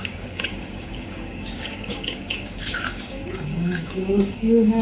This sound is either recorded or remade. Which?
remade